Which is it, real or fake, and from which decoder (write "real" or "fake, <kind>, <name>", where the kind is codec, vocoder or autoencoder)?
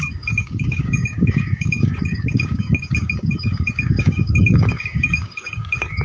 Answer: fake, codec, DAC